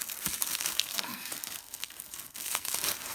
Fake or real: fake